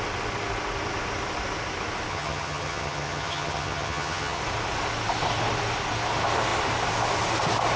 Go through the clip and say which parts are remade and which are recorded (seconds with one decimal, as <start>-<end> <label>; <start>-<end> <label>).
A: 0.0-2.1 recorded; 2.1-4.4 remade; 4.4-7.8 recorded